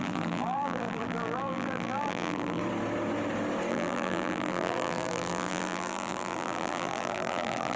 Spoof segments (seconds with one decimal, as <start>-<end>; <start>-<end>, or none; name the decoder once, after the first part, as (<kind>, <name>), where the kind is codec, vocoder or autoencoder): 0.0-2.6 (vocoder, BigVGAN v2); 3.7-7.8